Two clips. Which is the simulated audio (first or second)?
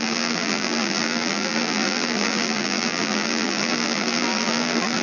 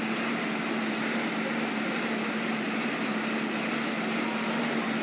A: first